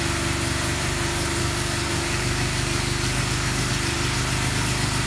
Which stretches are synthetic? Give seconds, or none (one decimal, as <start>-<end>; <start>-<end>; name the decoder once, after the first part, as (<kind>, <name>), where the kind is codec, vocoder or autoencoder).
1.4-3.7 (codec, DAC)